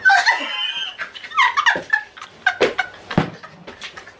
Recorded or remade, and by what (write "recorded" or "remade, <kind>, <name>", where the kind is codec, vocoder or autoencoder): recorded